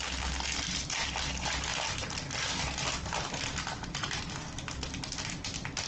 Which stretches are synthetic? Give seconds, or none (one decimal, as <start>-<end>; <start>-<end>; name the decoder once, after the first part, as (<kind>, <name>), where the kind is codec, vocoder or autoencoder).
none